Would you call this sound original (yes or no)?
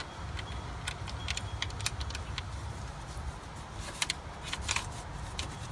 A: yes